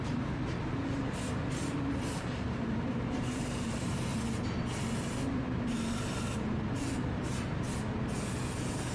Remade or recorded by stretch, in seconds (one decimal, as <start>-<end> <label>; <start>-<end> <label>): 0.0-4.1 remade; 4.1-8.9 recorded